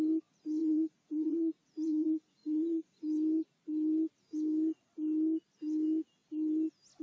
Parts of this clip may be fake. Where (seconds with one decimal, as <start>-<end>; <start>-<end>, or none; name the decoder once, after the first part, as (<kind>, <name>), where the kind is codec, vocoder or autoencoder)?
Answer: 0.6-3.0 (vocoder, Vocos)